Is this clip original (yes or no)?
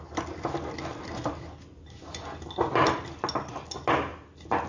yes